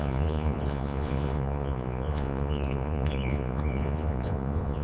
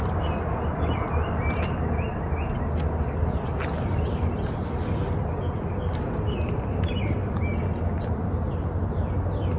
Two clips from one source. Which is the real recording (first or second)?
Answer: second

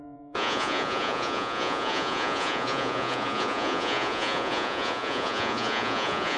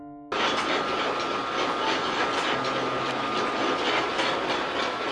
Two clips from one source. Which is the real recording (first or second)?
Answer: second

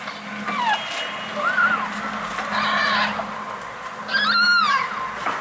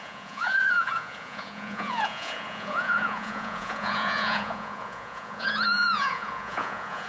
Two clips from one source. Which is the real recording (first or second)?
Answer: first